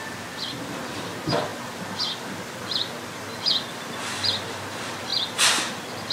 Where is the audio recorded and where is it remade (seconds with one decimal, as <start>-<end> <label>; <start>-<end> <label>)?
0.0-6.1 recorded